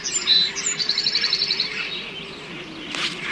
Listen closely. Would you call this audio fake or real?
real